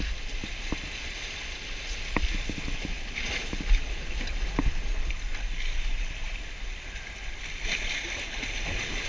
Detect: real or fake real